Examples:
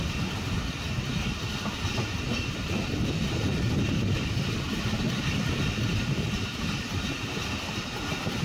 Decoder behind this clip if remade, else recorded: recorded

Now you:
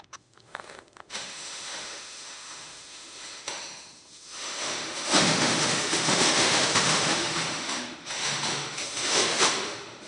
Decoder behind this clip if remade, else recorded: remade, autoencoder, DAC-VAE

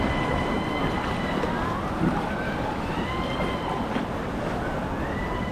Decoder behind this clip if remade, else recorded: recorded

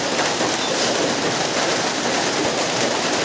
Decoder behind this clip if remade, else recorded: recorded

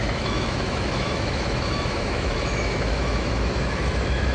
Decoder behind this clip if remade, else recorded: remade, autoencoder, DAC-VAE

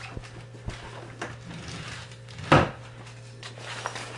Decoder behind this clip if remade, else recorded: recorded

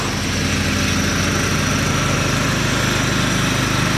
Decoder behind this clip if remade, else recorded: recorded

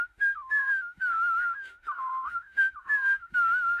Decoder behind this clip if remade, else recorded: remade, autoencoder, DAC-VAE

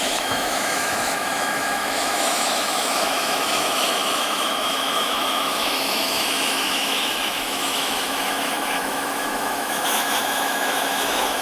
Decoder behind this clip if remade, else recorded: remade, autoencoder, DAC-VAE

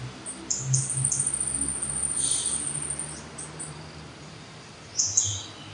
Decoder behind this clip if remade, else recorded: recorded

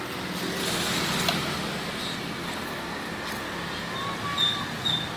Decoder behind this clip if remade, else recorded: recorded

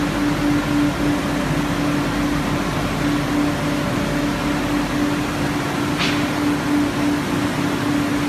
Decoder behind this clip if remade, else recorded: recorded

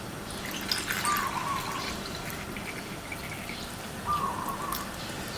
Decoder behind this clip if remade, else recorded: recorded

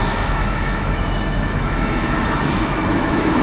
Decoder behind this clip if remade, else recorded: remade, autoencoder, DAC-VAE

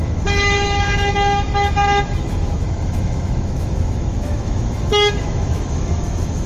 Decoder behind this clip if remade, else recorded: remade, autoencoder, DAC-VAE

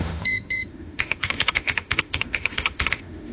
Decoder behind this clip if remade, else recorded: remade, autoencoder, DAC-VAE